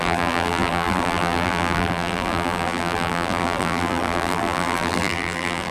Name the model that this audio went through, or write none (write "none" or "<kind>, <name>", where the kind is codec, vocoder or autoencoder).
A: vocoder, BigVGAN v2